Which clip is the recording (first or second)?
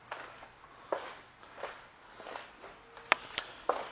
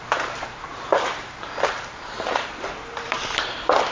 first